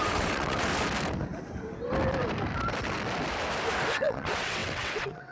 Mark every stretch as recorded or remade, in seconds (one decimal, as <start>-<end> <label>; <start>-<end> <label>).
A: 0.0-0.7 remade; 0.7-3.9 recorded; 3.9-5.3 remade